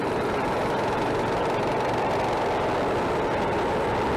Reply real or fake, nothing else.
real